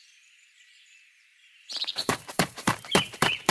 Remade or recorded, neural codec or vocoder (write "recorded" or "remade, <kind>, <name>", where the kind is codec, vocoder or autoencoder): remade, vocoder, BigVGAN v2